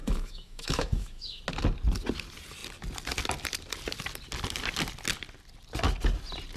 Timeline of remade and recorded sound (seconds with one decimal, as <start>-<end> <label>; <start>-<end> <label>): 0.0-1.4 remade; 1.4-6.6 recorded